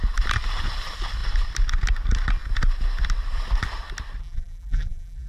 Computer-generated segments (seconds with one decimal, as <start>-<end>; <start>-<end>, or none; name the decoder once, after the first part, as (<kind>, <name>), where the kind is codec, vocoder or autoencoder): 4.2-5.3 (vocoder, BigVGAN v2)